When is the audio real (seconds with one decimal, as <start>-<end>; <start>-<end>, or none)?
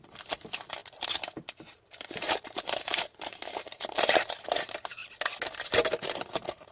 5.0-5.6